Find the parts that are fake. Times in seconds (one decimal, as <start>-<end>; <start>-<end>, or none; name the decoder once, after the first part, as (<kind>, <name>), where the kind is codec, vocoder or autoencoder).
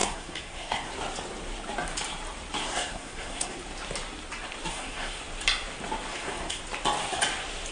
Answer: 0.0-0.9 (codec, SNAC); 2.6-3.6; 4.7-5.2; 6.1-6.6